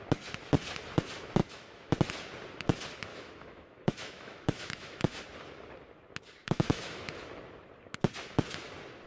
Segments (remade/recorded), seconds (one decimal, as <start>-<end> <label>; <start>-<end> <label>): 0.0-1.4 recorded; 1.4-1.9 remade; 1.9-3.1 recorded; 3.1-5.2 remade; 5.2-6.4 recorded; 6.4-7.1 remade; 7.1-9.1 recorded